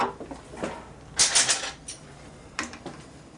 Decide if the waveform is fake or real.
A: real